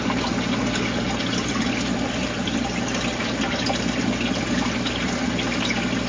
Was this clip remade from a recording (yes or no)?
no